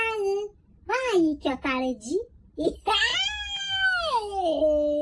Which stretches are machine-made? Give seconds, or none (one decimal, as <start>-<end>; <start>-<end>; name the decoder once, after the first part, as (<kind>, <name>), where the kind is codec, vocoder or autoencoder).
3.1-4.5 (autoencoder, DAC-VAE)